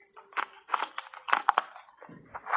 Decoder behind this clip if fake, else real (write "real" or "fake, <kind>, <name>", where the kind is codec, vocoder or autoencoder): real